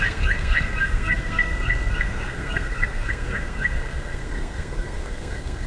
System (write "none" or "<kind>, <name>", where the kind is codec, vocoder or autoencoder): codec, SNAC